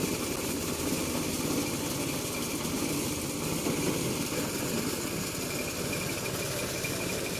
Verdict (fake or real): real